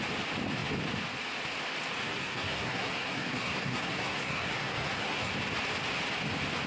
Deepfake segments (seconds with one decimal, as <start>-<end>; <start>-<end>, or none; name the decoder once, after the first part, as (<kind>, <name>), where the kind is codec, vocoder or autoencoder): 2.0-5.3 (codec, SNAC)